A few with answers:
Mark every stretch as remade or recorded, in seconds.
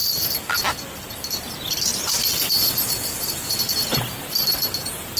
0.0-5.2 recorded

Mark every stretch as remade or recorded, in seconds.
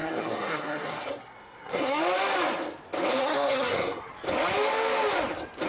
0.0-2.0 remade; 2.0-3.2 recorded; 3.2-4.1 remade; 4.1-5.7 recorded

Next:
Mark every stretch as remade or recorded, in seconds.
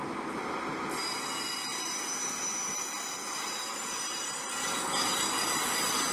0.0-6.1 recorded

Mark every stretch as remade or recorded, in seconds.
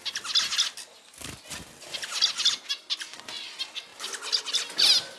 0.0-5.2 recorded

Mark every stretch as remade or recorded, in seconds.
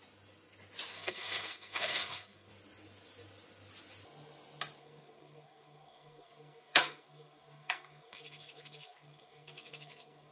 0.0-0.9 recorded; 0.9-2.5 remade; 2.5-4.8 recorded; 4.8-10.3 remade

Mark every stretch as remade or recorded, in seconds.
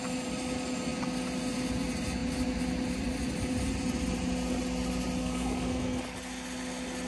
0.0-5.2 recorded; 5.2-6.0 remade; 6.0-7.1 recorded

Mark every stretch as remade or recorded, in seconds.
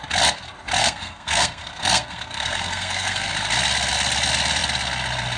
0.0-0.8 recorded; 0.8-3.3 remade; 3.3-5.4 recorded